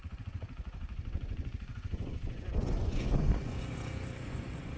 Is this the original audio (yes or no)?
no